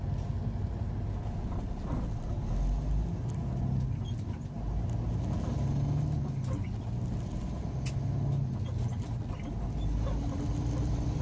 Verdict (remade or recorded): recorded